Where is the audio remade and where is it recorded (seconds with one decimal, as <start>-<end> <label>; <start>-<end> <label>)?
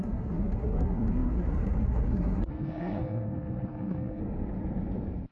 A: 0.0-4.2 remade; 4.2-5.3 recorded